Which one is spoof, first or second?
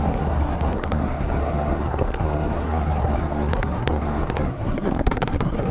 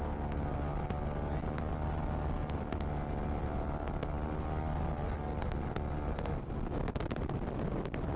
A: first